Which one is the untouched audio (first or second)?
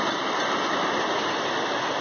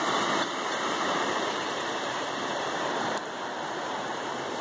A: first